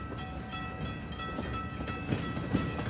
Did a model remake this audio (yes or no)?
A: no